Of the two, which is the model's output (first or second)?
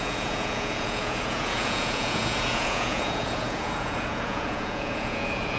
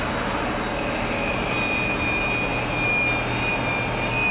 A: first